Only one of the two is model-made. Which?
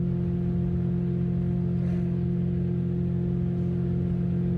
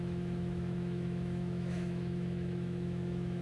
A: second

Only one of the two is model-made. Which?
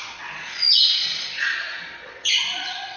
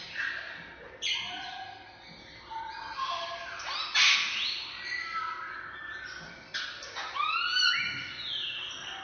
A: first